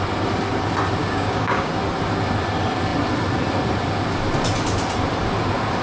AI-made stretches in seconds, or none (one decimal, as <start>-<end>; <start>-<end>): 1.0-1.7